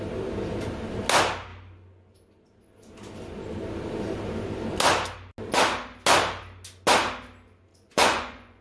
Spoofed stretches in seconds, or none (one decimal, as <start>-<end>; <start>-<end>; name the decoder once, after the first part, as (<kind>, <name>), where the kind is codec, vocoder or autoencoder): 7.7-8.6 (vocoder, Vocos)